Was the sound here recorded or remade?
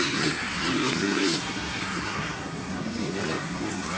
remade